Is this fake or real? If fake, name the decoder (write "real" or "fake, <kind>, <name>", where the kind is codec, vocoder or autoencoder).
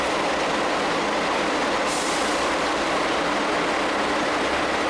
real